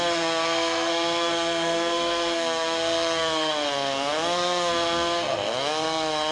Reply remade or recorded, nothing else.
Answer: remade